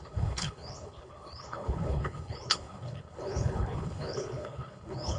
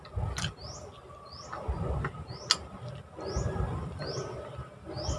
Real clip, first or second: second